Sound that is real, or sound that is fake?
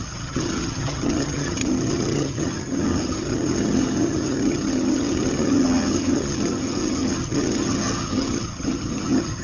fake